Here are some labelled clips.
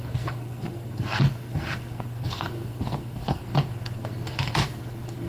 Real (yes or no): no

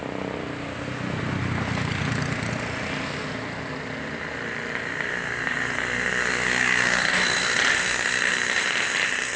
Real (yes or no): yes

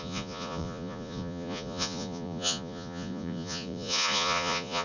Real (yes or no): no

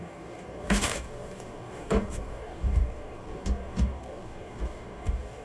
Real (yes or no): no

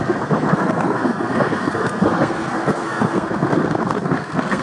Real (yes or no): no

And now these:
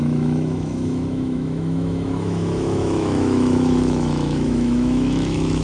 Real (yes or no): no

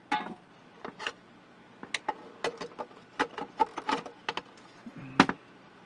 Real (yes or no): yes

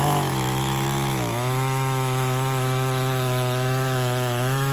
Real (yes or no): no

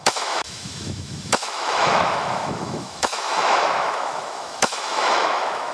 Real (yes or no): no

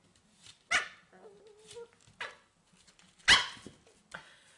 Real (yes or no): yes